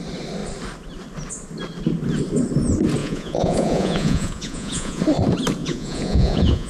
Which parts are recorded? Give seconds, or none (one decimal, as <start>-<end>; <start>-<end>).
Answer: 0.0-3.0; 5.0-5.6